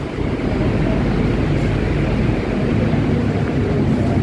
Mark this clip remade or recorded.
recorded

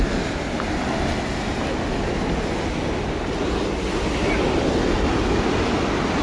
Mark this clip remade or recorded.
recorded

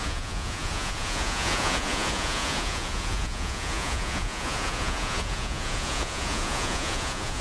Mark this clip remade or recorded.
remade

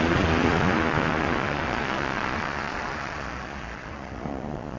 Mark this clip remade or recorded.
remade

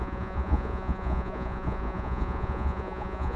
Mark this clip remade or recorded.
remade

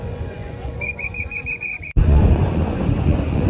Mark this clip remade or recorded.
remade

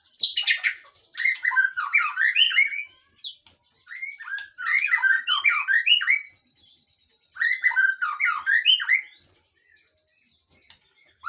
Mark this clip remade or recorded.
recorded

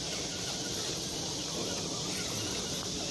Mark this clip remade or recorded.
recorded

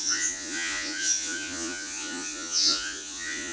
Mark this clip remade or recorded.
remade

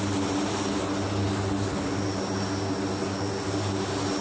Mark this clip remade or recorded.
recorded